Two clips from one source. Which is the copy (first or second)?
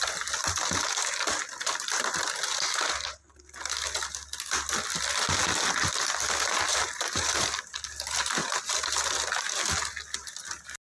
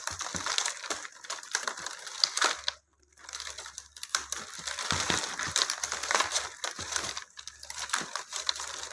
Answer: second